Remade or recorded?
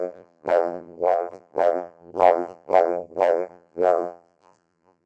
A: remade